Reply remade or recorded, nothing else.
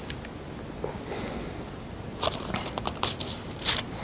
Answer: recorded